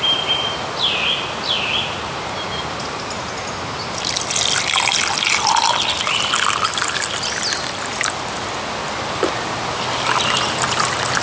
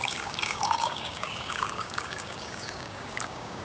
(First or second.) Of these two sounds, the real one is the first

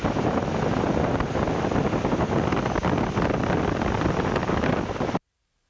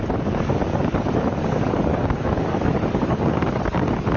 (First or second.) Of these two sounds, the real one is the first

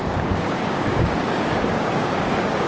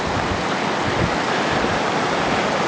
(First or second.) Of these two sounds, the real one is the second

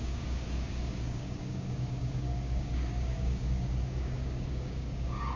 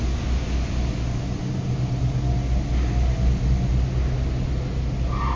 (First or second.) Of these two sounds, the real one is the second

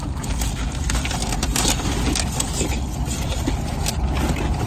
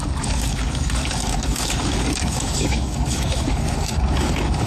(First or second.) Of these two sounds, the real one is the first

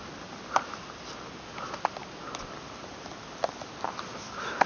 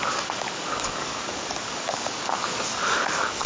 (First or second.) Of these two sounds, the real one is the first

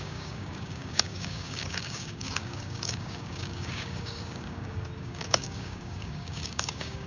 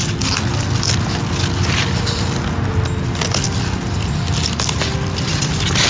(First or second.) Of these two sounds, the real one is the second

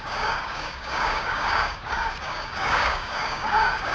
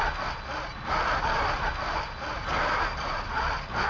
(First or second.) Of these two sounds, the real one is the second